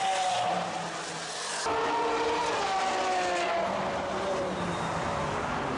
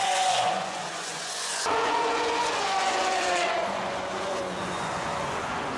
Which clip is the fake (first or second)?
second